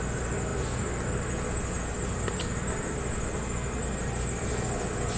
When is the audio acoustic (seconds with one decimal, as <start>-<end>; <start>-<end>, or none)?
0.0-5.2